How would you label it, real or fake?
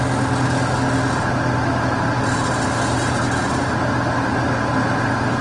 real